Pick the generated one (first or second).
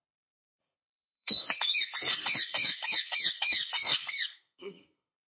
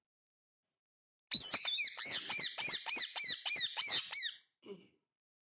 first